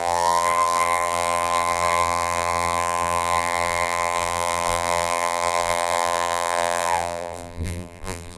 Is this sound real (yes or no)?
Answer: no